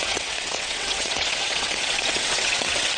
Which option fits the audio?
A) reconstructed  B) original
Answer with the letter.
A